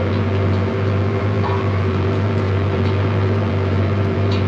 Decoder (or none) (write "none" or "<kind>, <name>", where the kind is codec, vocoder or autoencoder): vocoder, BigVGAN v2